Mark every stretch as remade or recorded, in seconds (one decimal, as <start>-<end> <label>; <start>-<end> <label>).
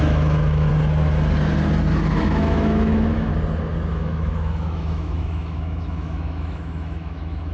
0.0-0.7 remade; 0.7-2.2 recorded; 2.2-3.3 remade; 3.3-3.9 recorded; 3.9-7.5 remade